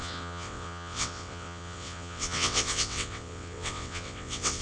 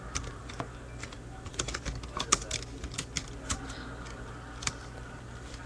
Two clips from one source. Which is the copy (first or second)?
first